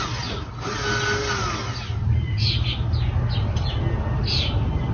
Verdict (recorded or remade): recorded